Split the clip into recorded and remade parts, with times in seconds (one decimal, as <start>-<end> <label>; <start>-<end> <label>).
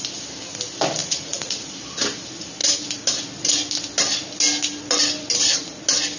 0.0-1.0 recorded; 1.0-1.7 remade; 1.7-6.2 recorded